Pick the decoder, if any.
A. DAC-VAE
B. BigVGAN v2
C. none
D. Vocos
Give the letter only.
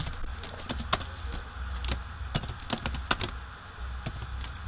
C